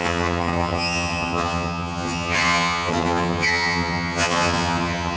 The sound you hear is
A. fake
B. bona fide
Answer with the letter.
A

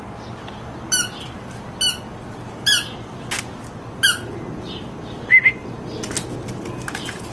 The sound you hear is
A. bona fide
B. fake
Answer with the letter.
A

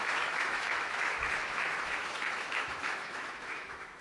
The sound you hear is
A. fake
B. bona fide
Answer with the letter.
A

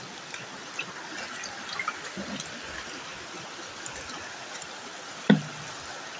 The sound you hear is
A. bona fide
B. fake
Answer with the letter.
A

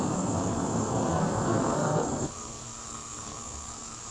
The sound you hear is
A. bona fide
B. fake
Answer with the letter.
B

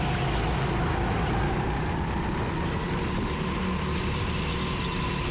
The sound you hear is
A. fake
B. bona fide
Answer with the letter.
B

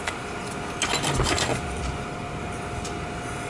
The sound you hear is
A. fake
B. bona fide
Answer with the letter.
B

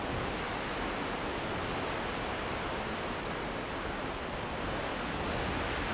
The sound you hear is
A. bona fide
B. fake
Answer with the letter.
A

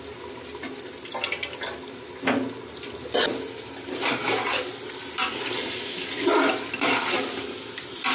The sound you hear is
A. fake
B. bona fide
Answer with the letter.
B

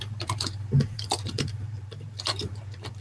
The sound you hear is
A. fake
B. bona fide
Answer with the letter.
A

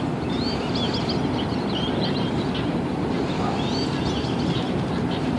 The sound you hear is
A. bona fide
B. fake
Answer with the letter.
B